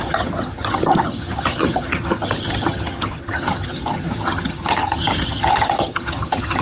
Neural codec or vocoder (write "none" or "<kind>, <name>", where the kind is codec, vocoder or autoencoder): vocoder, HiFi-GAN